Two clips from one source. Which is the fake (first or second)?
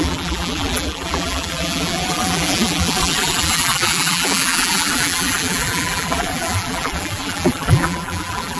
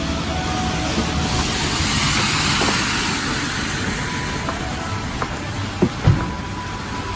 first